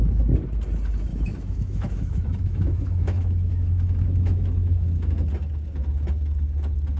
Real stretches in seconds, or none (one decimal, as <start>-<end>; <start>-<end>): 0.0-1.1; 5.3-7.0